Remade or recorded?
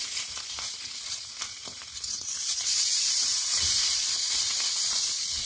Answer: remade